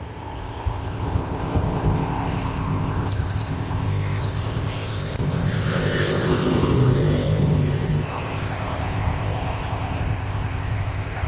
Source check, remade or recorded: remade